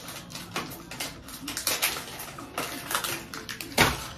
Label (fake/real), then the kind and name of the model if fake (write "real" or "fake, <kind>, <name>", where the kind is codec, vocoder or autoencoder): real